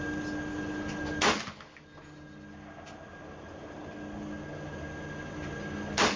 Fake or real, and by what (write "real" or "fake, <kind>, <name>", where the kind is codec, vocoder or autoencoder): real